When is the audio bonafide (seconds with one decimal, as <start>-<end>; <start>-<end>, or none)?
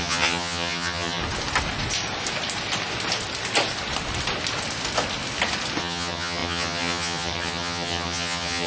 1.2-5.8